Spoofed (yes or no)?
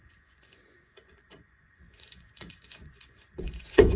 yes